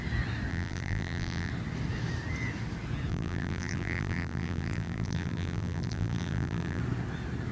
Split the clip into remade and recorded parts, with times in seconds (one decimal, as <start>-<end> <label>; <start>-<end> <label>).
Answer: 0.0-0.5 recorded; 0.5-1.5 remade; 1.5-3.1 recorded; 3.1-6.8 remade; 6.8-7.5 recorded